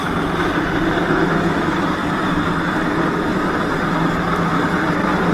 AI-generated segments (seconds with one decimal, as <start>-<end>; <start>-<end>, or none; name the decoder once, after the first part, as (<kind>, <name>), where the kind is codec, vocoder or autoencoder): 1.1-2.0 (autoencoder, DAC-VAE)